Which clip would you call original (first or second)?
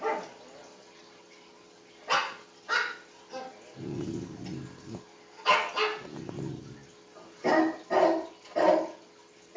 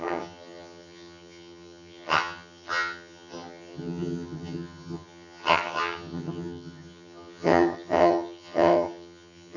first